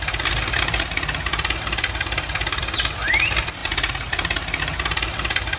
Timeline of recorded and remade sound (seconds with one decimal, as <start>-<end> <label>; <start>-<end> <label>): 0.0-5.6 recorded